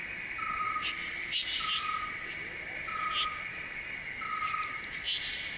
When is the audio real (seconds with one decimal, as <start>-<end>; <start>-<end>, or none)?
0.0-5.6